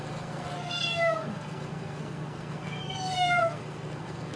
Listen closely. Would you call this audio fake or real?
fake